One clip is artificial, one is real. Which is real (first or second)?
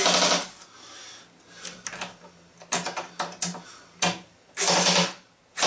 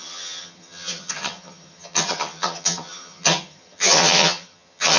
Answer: first